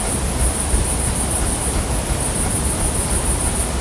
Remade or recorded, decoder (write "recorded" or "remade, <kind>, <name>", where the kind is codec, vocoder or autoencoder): recorded